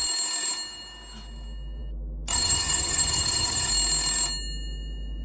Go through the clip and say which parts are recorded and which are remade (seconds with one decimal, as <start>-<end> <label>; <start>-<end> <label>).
0.0-2.3 recorded; 2.3-3.7 remade; 3.7-5.2 recorded